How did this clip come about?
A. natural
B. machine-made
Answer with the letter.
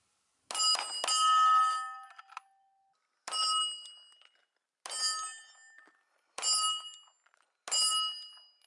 A